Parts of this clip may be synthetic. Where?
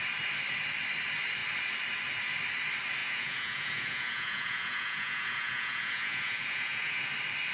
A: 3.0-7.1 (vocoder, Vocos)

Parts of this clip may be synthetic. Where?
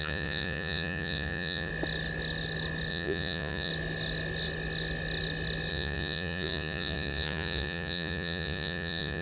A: 0.0-1.7 (vocoder, Vocos); 2.9-3.7; 5.7-9.2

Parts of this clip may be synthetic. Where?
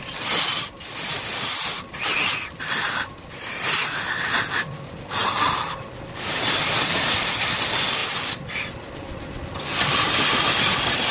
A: none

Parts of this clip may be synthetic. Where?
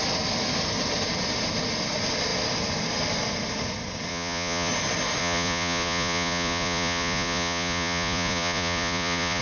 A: 4.1-4.7 (vocoder, Vocos); 5.2-9.4